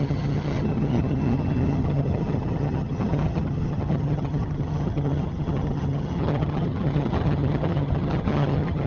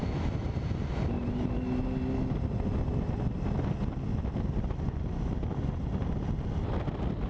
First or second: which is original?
second